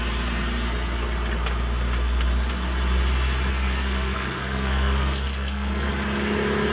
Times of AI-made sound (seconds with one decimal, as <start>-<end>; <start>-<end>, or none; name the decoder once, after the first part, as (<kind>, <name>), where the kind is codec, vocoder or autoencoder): 3.5-5.9 (codec, SNAC)